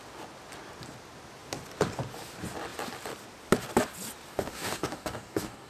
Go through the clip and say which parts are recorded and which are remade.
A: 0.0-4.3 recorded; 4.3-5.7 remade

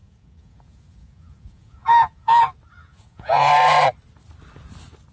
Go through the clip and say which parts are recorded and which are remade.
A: 0.0-2.4 remade; 2.4-2.8 recorded; 2.8-3.5 remade; 3.5-5.1 recorded

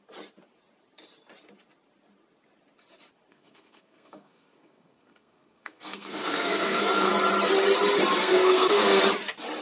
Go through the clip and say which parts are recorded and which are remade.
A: 0.0-3.3 recorded; 3.3-7.1 remade; 7.1-8.2 recorded; 8.2-9.0 remade; 9.0-9.6 recorded

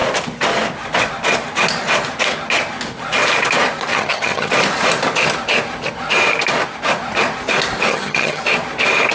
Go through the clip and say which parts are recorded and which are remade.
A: 0.0-3.9 recorded; 3.9-4.5 remade; 4.5-7.9 recorded; 7.9-8.4 remade; 8.4-9.1 recorded